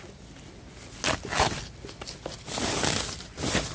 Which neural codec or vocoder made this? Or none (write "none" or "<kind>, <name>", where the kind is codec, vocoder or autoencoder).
none